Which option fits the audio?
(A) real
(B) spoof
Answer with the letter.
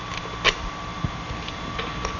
A